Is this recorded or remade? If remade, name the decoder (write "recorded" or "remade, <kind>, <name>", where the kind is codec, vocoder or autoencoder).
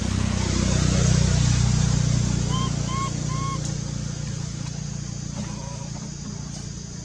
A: recorded